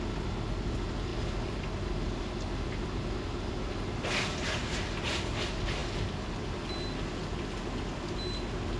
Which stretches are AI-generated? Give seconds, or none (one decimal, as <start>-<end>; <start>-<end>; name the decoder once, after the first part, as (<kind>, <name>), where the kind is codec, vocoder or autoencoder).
none